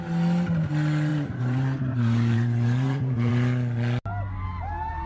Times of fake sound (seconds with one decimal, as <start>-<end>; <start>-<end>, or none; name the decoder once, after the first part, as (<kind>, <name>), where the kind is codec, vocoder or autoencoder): 1.1-3.3 (vocoder, BigVGAN v2)